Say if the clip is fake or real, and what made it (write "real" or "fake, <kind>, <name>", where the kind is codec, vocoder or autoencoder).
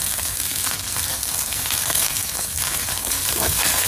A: fake, codec, SNAC